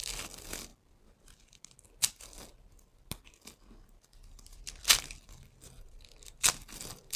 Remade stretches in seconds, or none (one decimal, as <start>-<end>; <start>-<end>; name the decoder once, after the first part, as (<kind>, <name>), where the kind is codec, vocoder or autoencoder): none